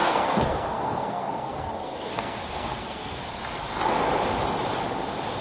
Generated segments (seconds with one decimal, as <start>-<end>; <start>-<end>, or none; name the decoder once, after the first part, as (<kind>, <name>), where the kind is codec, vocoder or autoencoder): 0.0-3.2 (codec, SNAC)